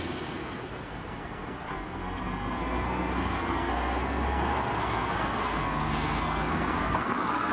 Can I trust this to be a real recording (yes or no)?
no